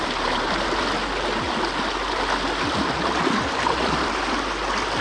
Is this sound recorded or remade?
recorded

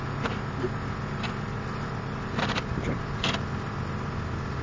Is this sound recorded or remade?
recorded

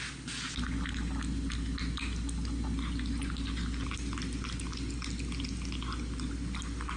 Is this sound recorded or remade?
recorded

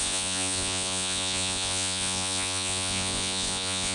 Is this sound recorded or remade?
remade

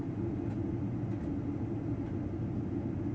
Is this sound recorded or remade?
recorded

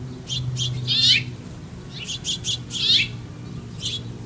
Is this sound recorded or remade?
recorded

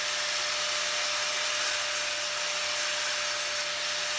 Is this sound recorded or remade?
recorded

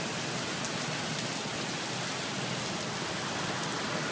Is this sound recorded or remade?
recorded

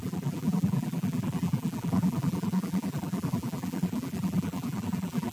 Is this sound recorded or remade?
remade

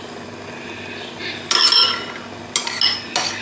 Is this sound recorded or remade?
recorded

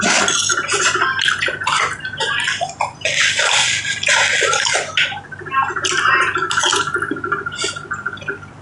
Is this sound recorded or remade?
recorded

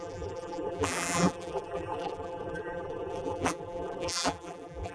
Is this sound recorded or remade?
remade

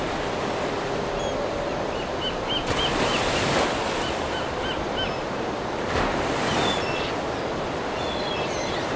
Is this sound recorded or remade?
recorded